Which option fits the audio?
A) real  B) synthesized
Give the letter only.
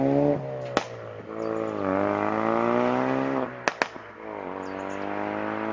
A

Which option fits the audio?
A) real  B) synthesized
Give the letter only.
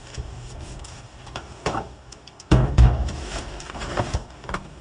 B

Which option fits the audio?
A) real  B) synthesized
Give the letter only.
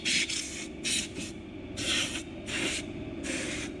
A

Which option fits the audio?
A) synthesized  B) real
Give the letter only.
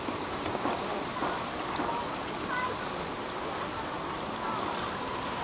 B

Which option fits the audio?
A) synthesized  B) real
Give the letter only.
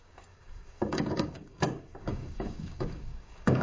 A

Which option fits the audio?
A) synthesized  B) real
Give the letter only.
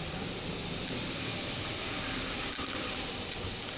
B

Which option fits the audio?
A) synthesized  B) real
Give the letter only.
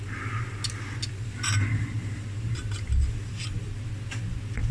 B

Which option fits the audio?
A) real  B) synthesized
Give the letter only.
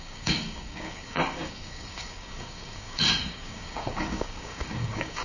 B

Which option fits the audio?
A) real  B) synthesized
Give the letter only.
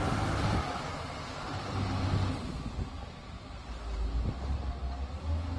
A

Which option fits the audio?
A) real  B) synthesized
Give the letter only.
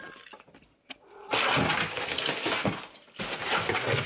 A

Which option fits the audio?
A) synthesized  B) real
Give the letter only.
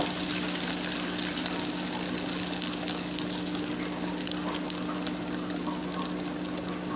B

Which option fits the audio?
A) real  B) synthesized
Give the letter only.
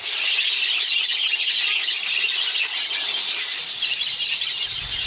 A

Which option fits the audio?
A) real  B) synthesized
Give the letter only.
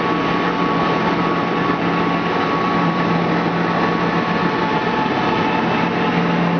A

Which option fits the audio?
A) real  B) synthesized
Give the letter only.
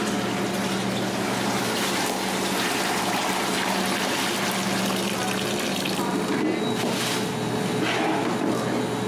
A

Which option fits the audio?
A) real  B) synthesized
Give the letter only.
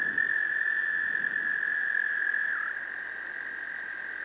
A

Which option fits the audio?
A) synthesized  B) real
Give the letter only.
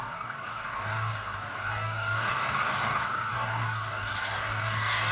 A